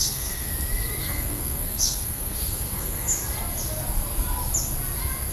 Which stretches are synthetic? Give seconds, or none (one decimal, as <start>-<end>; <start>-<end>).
0.0-0.5; 1.0-3.2